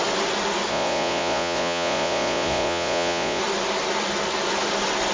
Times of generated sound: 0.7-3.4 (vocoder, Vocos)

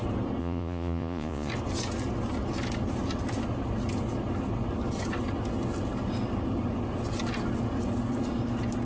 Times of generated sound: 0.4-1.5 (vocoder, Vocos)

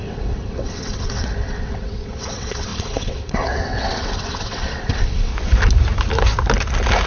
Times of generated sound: 0.0-5.3 (vocoder, WaveNeXt)